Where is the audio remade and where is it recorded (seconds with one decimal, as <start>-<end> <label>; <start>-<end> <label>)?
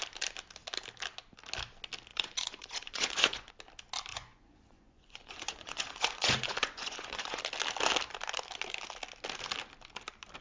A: 0.0-2.1 recorded; 2.1-3.5 remade; 3.5-4.1 recorded; 4.1-7.4 remade; 7.4-10.4 recorded